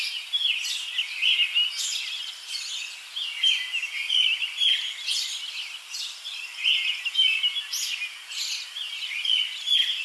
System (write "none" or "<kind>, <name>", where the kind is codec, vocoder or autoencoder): none